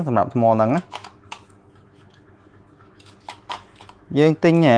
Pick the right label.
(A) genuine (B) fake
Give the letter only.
B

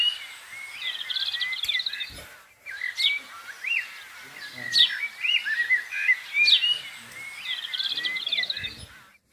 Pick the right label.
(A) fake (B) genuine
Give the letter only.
B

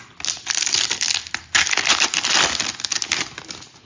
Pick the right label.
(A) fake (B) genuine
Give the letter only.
B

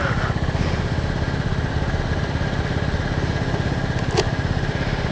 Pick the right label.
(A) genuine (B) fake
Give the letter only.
A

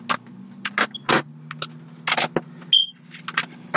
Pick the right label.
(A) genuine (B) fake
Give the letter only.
A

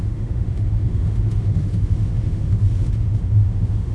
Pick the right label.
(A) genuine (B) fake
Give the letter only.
B